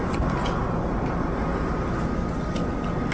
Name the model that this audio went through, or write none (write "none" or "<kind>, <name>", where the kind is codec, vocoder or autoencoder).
none